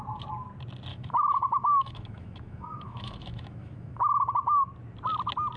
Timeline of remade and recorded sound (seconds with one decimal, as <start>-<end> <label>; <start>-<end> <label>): 0.0-0.9 recorded; 0.9-4.3 remade; 4.3-5.6 recorded